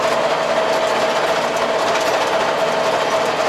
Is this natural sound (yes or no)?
yes